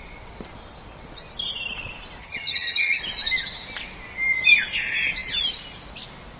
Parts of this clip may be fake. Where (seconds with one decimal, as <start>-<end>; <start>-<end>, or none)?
2.2-3.0